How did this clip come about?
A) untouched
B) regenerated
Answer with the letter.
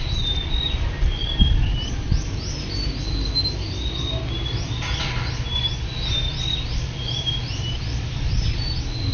A